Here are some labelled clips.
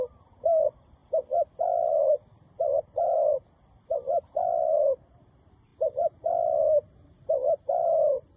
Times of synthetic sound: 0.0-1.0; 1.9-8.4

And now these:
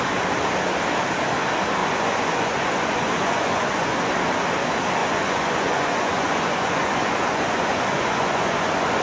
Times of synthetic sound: 1.8-4.1; 5.0-9.0

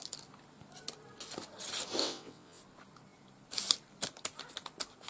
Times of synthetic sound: 2.0-2.6